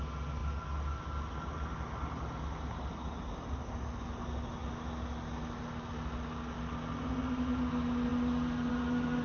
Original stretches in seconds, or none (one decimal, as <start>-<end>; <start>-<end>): 0.0-9.2